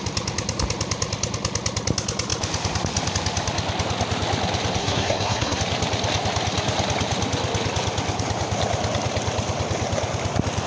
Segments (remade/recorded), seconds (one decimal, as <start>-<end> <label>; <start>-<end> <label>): 0.0-4.8 recorded; 4.8-5.6 remade; 5.6-10.7 recorded